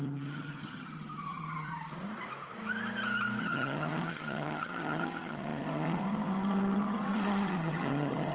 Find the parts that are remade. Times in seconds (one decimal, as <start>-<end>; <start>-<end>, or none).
0.0-1.7; 3.4-8.3